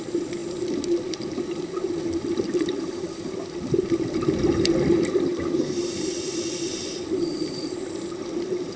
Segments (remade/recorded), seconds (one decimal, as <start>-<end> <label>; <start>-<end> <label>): 0.0-8.8 remade